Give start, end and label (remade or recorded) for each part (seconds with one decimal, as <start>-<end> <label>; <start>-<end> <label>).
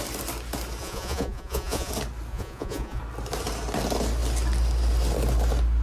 0.0-0.8 recorded; 0.8-1.9 remade; 1.9-2.3 recorded; 2.3-3.0 remade; 3.0-5.8 recorded